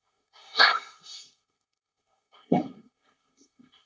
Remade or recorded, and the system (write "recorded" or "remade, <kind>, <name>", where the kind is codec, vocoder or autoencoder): remade, codec, SNAC